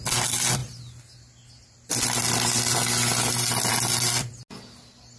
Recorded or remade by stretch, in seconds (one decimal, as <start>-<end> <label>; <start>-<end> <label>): 0.0-5.2 recorded